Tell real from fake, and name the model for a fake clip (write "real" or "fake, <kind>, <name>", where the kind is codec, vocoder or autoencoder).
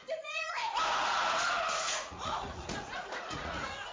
fake, vocoder, Vocos